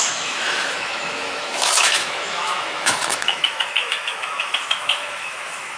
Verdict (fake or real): fake